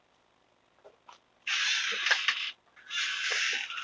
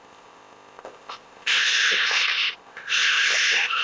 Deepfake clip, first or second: second